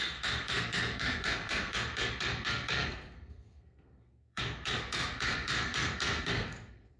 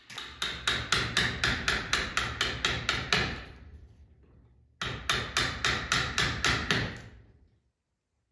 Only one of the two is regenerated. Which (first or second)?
first